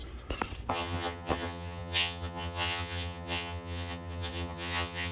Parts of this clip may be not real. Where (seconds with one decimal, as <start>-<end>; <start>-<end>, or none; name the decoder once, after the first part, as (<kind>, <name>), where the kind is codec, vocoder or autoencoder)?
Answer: 0.7-5.1 (vocoder, HiFi-GAN)